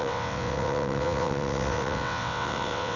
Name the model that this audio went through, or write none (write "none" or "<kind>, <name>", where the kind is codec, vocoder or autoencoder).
vocoder, WaveNeXt